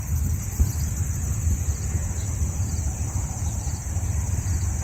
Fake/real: fake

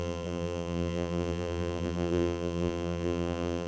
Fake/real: fake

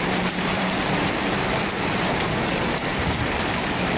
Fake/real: fake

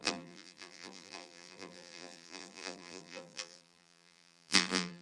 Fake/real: fake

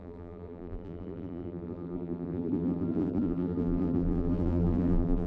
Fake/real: fake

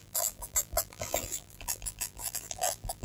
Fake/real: fake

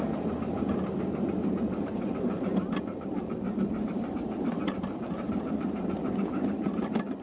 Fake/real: fake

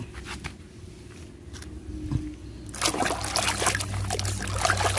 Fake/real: real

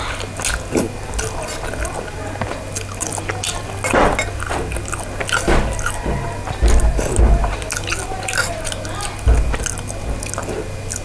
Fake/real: real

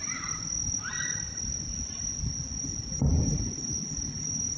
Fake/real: fake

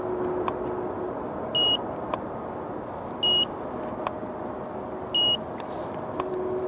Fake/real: real